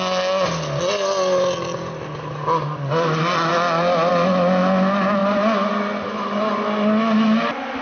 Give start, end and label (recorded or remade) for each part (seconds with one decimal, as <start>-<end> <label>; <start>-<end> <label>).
0.0-5.2 recorded; 5.2-6.6 remade; 6.6-7.8 recorded